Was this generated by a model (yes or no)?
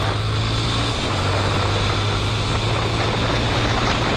no